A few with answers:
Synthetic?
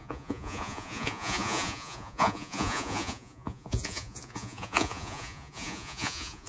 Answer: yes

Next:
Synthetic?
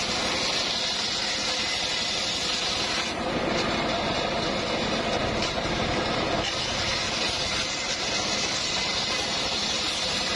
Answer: no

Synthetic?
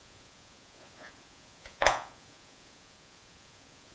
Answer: yes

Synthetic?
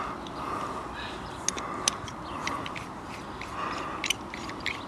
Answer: no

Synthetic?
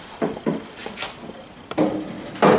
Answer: no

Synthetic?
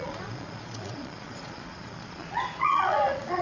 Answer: yes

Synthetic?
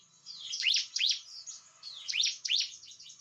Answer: yes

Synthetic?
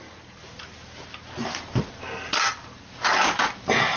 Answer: no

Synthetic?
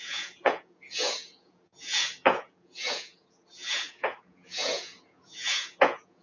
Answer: yes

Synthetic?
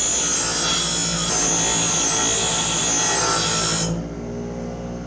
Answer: no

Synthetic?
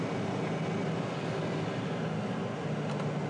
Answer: no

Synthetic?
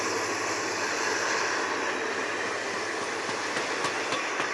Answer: no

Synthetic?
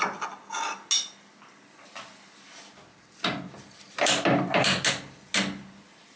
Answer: no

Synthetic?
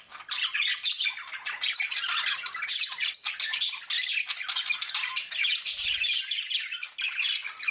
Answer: no